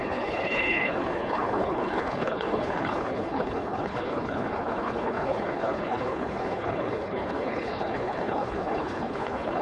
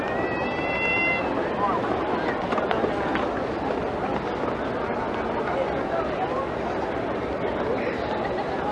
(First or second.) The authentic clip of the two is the second